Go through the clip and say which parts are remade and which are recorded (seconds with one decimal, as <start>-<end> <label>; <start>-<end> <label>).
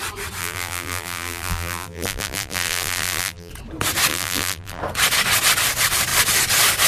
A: 0.0-0.4 recorded; 0.4-3.5 remade; 3.5-4.1 recorded; 4.1-4.8 remade; 4.8-6.9 recorded